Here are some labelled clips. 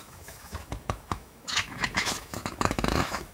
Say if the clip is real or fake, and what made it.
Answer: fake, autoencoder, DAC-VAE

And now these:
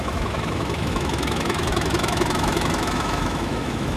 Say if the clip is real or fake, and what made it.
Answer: fake, autoencoder, DAC-VAE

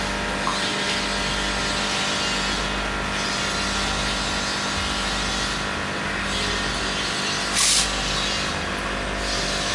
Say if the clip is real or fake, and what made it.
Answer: real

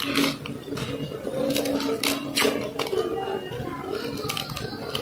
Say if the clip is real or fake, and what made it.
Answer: real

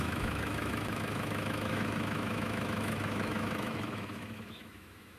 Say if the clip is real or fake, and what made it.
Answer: fake, autoencoder, DAC-VAE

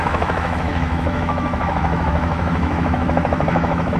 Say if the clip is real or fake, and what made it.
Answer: fake, autoencoder, DAC-VAE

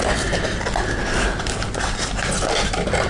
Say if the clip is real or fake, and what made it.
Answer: real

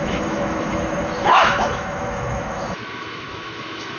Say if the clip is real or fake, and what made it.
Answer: fake, autoencoder, DAC-VAE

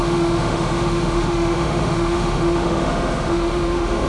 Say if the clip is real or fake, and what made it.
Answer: fake, autoencoder, DAC-VAE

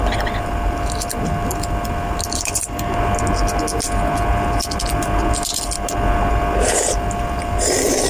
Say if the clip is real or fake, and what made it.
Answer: real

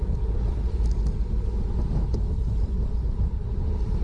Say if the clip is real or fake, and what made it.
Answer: real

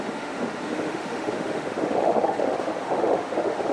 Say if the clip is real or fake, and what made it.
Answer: fake, autoencoder, DAC-VAE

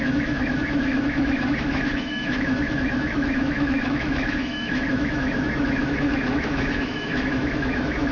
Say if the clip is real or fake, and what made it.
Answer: fake, autoencoder, DAC-VAE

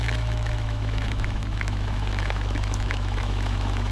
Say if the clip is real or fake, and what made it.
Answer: fake, autoencoder, DAC-VAE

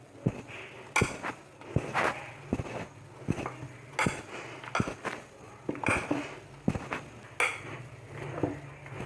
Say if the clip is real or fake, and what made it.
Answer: real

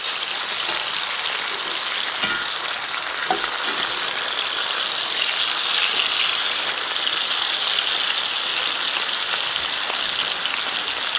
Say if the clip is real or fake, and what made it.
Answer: real